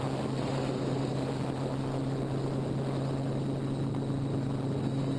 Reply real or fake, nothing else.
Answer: real